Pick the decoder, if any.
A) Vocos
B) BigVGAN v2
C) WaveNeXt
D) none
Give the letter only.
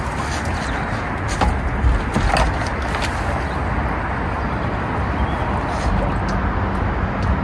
D